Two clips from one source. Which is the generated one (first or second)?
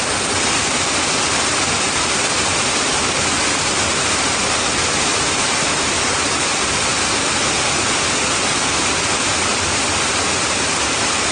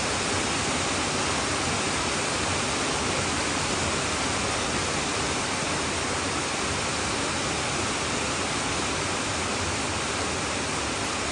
first